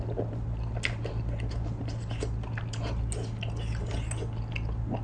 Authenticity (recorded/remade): recorded